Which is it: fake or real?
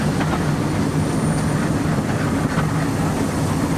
real